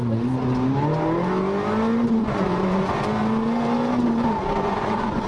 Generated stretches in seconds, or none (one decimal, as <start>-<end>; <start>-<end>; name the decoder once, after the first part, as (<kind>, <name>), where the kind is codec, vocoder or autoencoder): 2.2-2.9 (vocoder, Vocos); 4.4-5.3

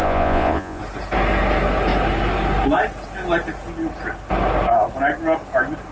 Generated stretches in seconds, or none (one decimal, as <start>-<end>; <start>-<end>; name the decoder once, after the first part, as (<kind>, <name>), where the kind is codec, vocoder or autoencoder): 0.0-0.8 (vocoder, Vocos)

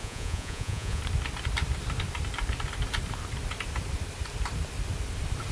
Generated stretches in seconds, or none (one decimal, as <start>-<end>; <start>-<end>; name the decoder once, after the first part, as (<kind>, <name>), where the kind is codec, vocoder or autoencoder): 0.0-1.0 (vocoder, Vocos)

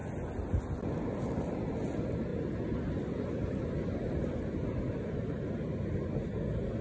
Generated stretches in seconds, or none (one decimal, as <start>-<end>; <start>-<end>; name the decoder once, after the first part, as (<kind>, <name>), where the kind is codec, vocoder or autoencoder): none

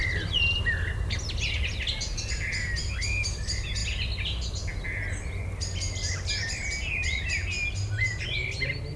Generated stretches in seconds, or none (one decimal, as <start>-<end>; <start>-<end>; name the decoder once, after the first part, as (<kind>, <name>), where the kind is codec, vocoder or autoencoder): none

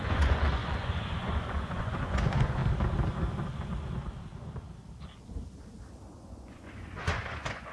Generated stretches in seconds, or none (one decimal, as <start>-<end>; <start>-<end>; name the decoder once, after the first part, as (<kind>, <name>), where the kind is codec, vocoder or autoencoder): 0.0-2.6 (vocoder, Vocos); 6.2-7.7

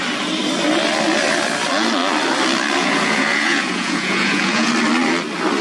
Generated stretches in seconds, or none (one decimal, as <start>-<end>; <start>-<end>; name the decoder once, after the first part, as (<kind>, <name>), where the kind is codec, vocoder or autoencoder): 2.8-4.7 (vocoder, Vocos)